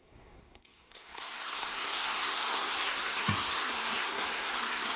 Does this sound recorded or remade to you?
remade